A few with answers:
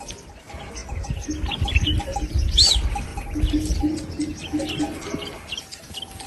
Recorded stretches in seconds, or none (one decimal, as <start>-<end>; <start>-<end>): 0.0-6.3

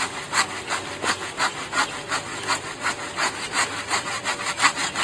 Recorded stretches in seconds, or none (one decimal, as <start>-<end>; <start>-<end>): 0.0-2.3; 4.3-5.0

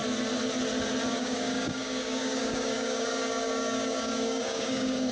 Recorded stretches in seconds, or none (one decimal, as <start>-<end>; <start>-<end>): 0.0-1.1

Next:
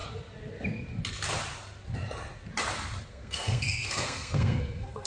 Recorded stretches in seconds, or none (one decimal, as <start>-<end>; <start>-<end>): 0.0-3.1